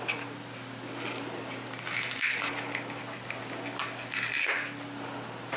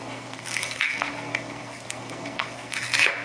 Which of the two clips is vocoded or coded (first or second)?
second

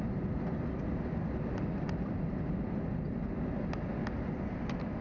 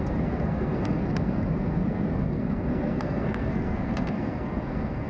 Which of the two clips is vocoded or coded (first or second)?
second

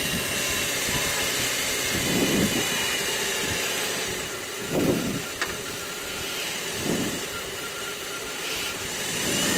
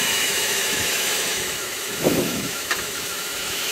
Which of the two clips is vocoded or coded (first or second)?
second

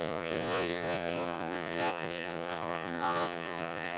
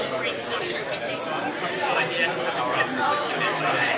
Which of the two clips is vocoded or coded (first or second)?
first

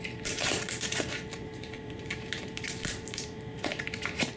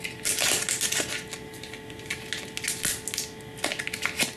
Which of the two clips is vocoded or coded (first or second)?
first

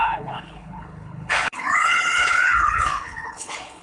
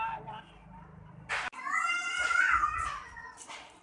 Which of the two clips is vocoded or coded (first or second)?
first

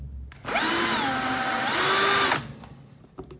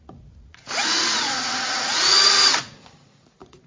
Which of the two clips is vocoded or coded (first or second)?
second